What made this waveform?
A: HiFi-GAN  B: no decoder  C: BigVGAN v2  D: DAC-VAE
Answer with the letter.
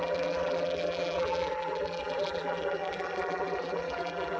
C